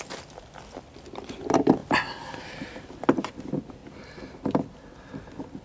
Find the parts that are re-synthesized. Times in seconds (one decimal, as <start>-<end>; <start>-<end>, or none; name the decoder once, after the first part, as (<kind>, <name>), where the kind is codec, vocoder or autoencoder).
none